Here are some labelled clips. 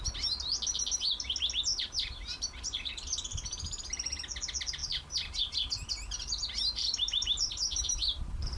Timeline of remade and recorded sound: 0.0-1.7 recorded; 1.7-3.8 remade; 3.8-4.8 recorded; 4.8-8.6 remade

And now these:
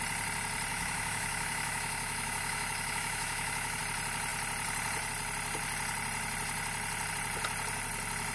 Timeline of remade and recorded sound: 0.0-0.7 recorded; 0.7-3.8 remade; 3.8-8.3 recorded

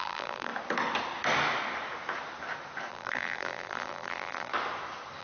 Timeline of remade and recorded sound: 0.0-0.5 remade; 0.5-2.9 recorded; 2.9-4.5 remade; 4.5-5.2 recorded

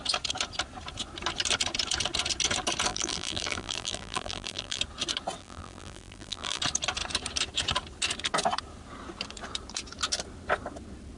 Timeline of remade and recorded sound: 0.0-2.9 recorded; 2.9-4.8 remade; 4.8-5.4 recorded; 5.4-6.6 remade; 6.6-11.2 recorded

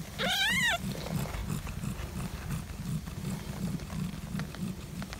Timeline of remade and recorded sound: 0.0-5.2 recorded

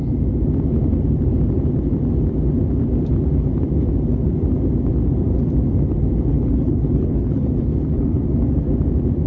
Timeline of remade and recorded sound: 0.0-6.3 recorded; 6.3-8.2 remade; 8.2-9.3 recorded

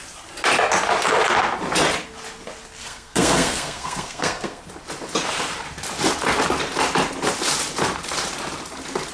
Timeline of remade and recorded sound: 0.0-2.8 recorded; 2.8-4.6 remade; 4.6-9.1 recorded